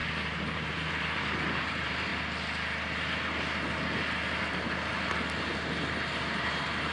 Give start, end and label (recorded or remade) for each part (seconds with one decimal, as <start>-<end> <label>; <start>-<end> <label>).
0.0-2.1 remade; 2.1-6.1 recorded; 6.1-6.9 remade